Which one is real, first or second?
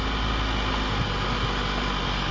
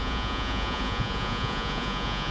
first